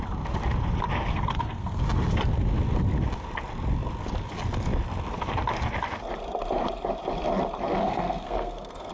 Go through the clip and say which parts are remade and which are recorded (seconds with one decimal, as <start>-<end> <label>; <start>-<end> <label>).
0.0-1.1 recorded; 1.1-1.8 remade; 1.8-7.8 recorded; 7.8-8.9 remade